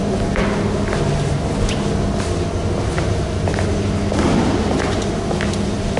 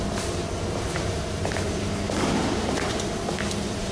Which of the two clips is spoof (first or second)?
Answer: second